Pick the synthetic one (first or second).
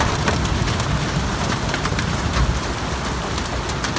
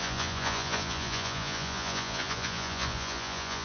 second